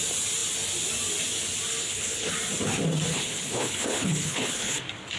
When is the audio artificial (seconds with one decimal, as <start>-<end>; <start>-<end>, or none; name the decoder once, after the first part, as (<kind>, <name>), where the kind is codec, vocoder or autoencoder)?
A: 1.8-2.3 (codec, HILCodec); 3.1-4.8